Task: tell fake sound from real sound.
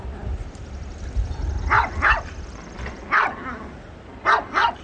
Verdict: real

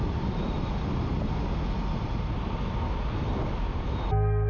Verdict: real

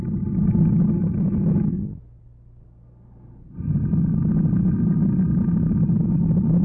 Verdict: real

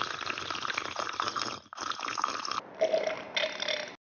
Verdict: real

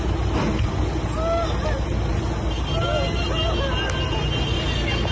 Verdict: real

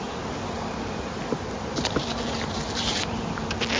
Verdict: real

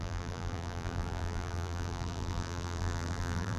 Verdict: fake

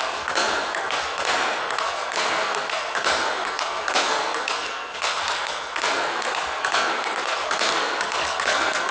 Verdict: fake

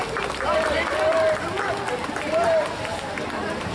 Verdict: real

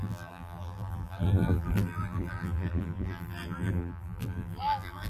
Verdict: fake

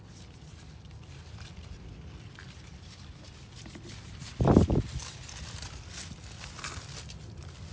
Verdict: real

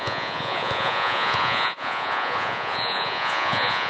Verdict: fake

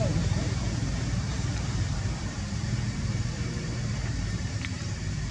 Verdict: fake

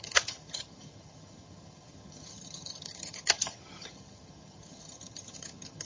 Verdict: fake